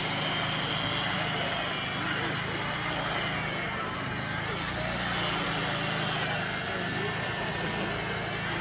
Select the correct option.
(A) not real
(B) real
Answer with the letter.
B